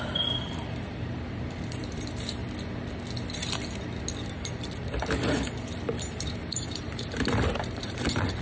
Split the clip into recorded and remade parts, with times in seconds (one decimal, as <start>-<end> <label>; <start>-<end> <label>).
0.0-2.4 remade; 2.4-4.2 recorded; 4.2-8.4 remade